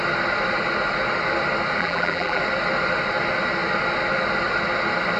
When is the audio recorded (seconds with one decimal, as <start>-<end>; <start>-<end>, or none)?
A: 0.0-1.8; 2.4-5.2